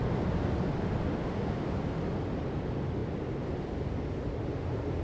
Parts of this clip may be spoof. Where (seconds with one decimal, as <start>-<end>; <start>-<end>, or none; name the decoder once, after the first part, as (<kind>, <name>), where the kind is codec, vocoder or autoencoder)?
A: none